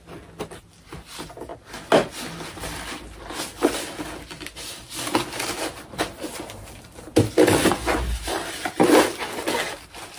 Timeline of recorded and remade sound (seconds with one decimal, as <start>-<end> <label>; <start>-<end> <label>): 0.0-10.2 recorded